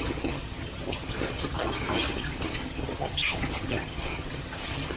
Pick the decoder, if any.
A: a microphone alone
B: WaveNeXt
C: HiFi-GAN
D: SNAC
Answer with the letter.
C